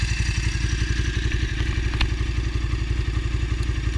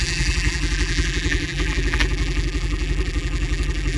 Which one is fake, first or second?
second